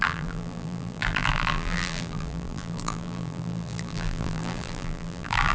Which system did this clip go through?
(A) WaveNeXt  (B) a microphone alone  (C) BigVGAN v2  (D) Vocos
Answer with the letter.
C